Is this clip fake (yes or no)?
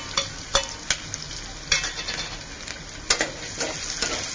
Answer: no